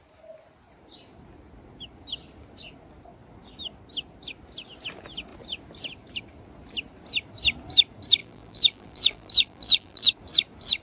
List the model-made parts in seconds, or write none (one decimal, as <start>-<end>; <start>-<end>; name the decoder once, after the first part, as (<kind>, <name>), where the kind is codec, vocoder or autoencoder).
8.2-10.1 (vocoder, BigVGAN v2)